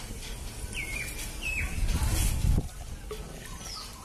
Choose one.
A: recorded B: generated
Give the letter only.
A